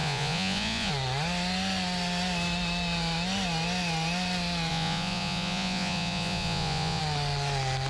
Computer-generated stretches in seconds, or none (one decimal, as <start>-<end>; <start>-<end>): 0.0-0.9; 4.7-7.0